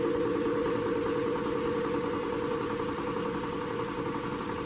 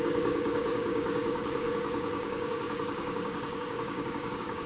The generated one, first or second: second